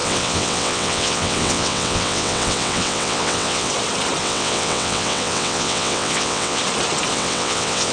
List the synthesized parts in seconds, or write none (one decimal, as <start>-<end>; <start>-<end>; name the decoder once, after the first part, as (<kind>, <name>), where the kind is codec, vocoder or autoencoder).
0.0-3.7 (vocoder, WaveNeXt); 4.2-6.6; 7.1-7.9